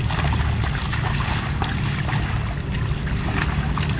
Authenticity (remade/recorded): recorded